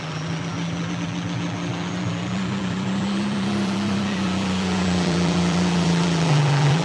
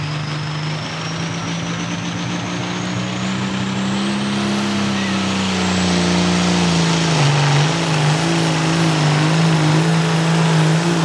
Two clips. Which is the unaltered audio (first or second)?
second